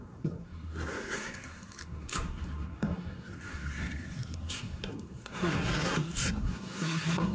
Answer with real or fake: fake